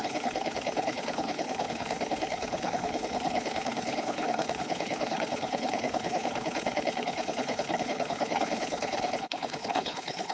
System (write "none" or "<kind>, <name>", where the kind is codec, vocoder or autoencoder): codec, HILCodec